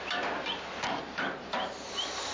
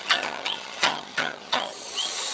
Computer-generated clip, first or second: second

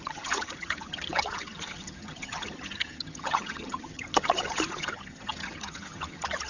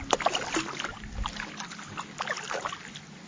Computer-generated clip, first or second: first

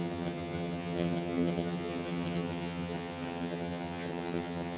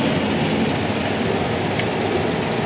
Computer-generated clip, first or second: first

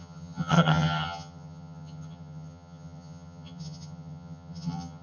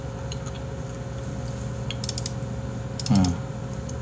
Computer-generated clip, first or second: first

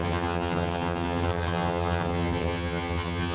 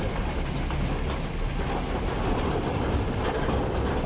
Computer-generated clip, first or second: first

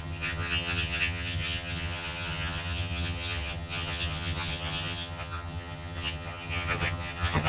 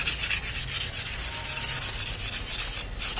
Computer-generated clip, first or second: first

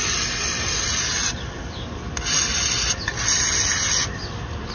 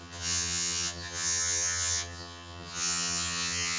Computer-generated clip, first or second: second